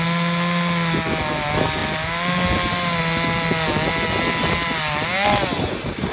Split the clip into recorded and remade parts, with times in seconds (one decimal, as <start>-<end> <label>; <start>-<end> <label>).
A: 0.0-6.1 recorded